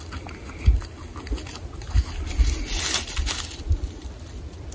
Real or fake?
real